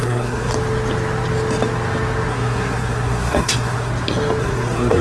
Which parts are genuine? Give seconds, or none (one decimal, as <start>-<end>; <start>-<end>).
0.5-2.3; 3.9-4.4